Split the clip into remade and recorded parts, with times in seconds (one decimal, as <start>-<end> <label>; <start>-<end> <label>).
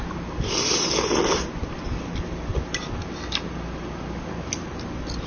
0.0-5.3 recorded